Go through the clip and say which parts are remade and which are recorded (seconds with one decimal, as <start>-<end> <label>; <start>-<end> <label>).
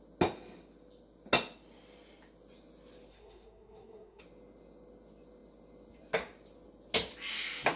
0.0-3.1 recorded; 3.1-4.2 remade; 4.2-7.8 recorded